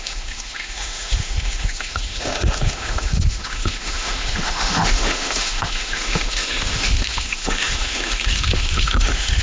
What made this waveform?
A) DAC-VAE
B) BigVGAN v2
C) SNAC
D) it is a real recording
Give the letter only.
A